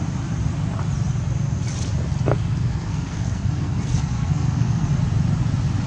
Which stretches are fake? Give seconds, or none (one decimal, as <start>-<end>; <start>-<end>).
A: 2.3-4.9